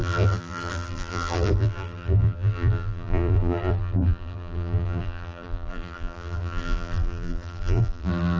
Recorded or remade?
remade